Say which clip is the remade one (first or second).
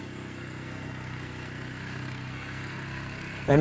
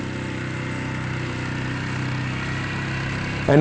first